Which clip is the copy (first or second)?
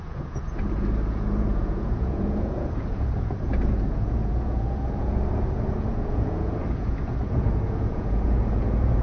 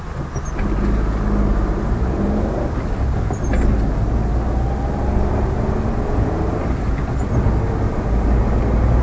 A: first